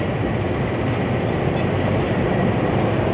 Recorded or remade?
recorded